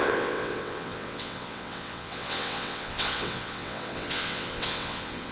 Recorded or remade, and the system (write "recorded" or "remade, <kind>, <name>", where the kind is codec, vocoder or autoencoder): remade, vocoder, WaveNeXt